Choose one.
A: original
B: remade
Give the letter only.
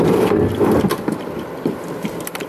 A